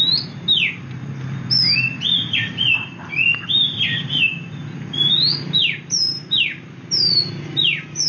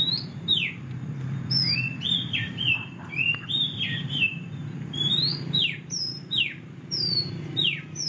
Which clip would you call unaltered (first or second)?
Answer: first